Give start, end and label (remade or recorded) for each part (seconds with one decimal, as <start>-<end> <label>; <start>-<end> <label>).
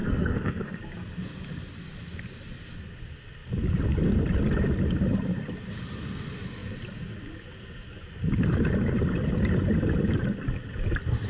0.0-0.8 remade; 0.8-11.3 recorded